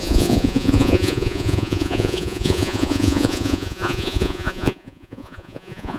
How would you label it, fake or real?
fake